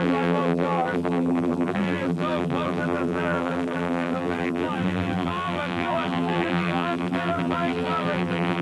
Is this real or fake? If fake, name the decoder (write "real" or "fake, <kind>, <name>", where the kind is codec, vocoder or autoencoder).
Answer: fake, vocoder, BigVGAN v2